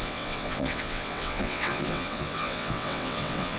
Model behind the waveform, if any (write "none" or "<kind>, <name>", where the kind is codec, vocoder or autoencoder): vocoder, WaveNeXt